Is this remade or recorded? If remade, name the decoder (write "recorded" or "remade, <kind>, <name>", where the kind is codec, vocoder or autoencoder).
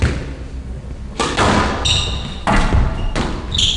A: recorded